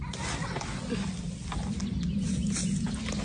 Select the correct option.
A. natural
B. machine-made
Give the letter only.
A